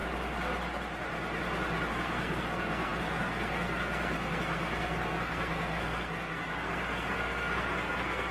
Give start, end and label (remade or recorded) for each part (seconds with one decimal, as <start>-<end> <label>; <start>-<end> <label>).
0.0-1.9 recorded; 1.9-8.3 remade